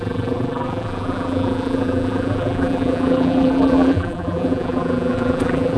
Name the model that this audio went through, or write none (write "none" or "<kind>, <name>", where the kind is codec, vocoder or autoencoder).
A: vocoder, BigVGAN v2